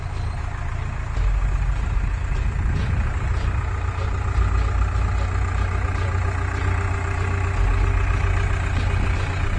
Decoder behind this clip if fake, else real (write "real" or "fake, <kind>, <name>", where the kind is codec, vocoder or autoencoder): real